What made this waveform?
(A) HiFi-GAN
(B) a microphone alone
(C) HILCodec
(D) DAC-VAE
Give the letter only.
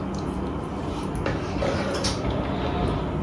B